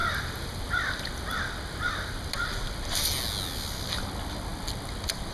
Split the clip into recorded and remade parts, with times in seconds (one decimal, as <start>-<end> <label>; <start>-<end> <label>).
0.0-5.3 recorded